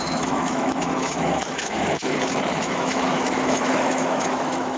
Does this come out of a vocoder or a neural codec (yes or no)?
yes